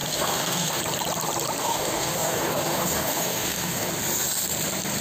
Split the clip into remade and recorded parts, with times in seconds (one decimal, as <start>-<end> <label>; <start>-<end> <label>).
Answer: 0.0-0.8 remade; 0.8-1.6 recorded; 1.6-3.9 remade; 3.9-5.0 recorded

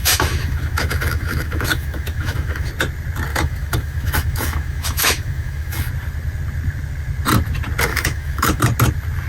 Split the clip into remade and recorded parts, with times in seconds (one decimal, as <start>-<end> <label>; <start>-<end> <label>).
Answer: 0.0-2.7 remade; 2.7-3.3 recorded; 3.3-5.9 remade; 5.9-7.9 recorded; 7.9-8.6 remade; 8.6-9.3 recorded

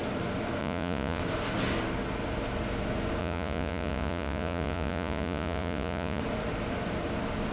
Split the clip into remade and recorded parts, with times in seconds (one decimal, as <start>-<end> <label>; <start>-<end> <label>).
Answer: 0.0-0.6 recorded; 0.6-1.2 remade; 1.2-3.2 recorded; 3.2-6.2 remade; 6.2-7.5 recorded

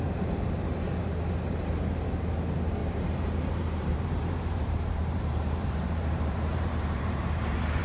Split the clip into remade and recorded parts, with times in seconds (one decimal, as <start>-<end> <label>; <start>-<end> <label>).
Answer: 0.0-2.8 recorded; 2.8-7.8 remade